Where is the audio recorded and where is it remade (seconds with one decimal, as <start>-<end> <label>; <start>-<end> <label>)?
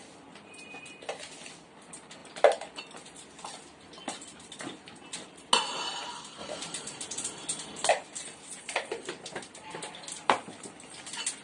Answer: 0.0-11.4 recorded